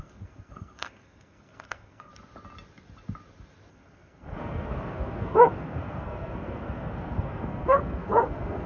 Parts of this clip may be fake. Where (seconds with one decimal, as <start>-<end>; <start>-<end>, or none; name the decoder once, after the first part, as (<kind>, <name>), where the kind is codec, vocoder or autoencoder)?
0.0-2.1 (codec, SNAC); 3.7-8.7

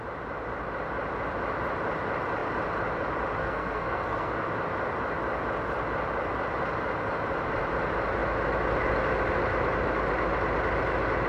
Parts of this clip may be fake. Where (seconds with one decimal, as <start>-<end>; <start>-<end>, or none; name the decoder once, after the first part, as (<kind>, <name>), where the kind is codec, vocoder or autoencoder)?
3.4-4.5 (codec, SNAC)

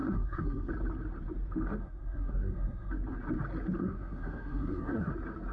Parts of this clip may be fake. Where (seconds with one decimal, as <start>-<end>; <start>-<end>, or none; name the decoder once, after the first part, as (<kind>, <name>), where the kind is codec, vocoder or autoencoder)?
0.0-0.7 (codec, SNAC); 1.8-2.9; 3.8-5.1

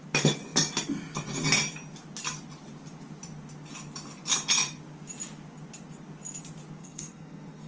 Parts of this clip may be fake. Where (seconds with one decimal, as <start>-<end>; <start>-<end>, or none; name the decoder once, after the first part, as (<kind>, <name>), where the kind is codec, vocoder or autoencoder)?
6.8-7.7 (codec, SNAC)

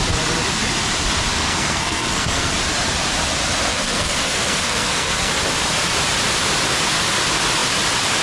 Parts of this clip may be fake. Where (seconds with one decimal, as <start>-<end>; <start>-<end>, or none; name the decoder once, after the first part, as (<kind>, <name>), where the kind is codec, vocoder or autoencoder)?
1.3-2.5 (codec, SNAC); 3.7-5.3